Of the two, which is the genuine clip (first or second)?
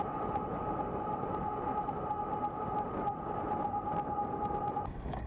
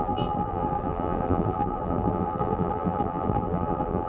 first